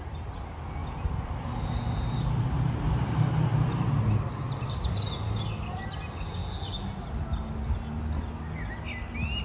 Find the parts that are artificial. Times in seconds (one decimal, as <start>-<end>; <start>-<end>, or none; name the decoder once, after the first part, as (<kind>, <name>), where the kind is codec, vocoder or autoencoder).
0.8-3.9 (vocoder, BigVGAN v2)